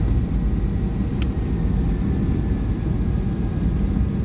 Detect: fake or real real